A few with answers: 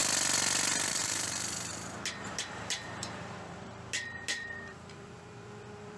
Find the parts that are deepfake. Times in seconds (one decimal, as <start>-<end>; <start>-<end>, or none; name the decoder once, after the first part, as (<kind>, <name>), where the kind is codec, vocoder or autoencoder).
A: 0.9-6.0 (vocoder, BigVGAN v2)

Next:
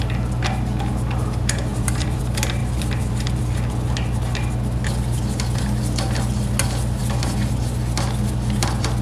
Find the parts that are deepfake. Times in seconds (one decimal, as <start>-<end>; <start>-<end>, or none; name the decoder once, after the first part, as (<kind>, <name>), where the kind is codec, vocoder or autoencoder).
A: 1.7-2.2 (vocoder, BigVGAN v2); 2.6-3.4

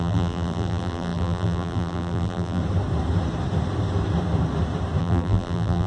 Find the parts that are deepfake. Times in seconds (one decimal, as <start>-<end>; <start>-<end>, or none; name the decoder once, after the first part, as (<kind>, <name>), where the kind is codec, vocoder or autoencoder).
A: 0.0-2.6 (vocoder, BigVGAN v2); 5.0-5.9

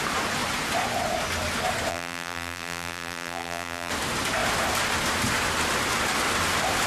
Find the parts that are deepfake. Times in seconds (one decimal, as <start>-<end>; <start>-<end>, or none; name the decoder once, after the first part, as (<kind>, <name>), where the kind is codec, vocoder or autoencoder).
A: 1.9-3.9 (vocoder, BigVGAN v2)

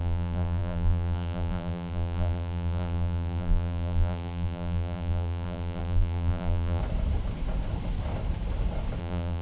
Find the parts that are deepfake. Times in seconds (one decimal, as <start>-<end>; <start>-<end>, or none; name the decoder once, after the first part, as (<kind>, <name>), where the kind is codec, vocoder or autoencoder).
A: 0.0-6.8 (vocoder, BigVGAN v2); 9.0-9.4

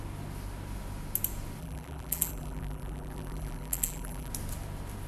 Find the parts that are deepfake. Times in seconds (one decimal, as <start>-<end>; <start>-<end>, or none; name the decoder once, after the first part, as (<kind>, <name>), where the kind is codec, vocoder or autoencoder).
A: 1.6-4.3 (vocoder, BigVGAN v2)

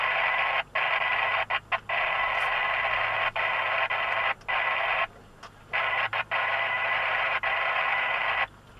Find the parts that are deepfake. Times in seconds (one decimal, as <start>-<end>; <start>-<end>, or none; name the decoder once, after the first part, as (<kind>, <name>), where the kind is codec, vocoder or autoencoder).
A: 6.1-8.2 (vocoder, BigVGAN v2)

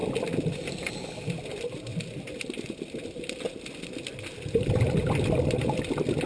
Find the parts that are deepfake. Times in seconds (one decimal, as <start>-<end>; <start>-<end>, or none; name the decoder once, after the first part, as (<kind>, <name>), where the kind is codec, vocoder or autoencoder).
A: 0.0-0.9 (vocoder, BigVGAN v2); 1.9-4.8